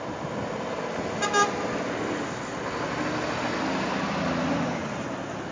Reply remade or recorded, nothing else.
recorded